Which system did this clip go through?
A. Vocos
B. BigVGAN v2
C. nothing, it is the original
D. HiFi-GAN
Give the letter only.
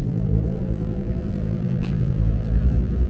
B